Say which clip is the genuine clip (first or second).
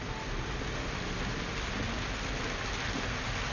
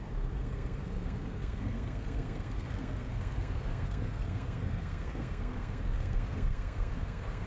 first